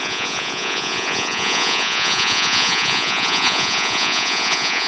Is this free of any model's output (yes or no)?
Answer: no